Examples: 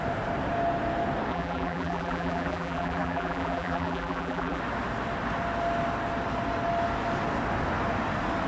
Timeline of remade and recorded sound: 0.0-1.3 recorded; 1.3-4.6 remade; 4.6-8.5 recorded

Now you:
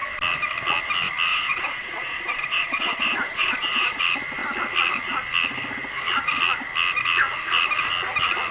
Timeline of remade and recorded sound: 0.0-1.3 recorded; 1.3-4.0 remade; 4.0-8.5 recorded

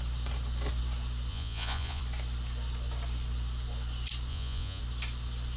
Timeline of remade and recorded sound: 0.0-1.3 recorded; 1.3-2.0 remade; 2.0-4.3 recorded; 4.3-4.8 remade; 4.8-5.6 recorded

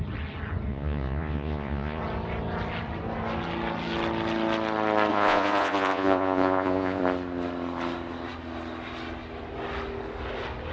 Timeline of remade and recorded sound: 0.0-0.7 recorded; 0.7-2.0 remade; 2.0-5.1 recorded; 5.1-7.0 remade; 7.0-10.7 recorded

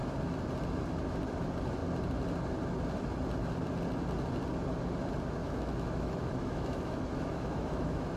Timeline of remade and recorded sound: 0.0-5.4 recorded; 5.4-8.2 remade

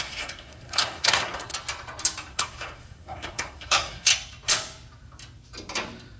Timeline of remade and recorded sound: 0.0-1.5 remade; 1.5-2.3 recorded; 2.3-4.1 remade; 4.1-6.2 recorded

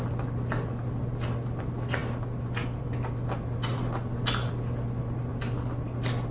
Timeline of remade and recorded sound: 0.0-6.3 recorded

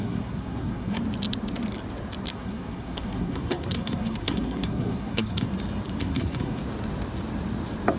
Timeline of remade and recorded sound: 0.0-1.0 remade; 1.0-2.3 recorded; 2.3-5.5 remade; 5.5-6.0 recorded; 6.0-6.6 remade; 6.6-8.0 recorded